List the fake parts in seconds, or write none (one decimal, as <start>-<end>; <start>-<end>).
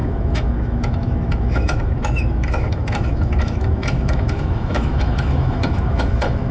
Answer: 0.0-6.5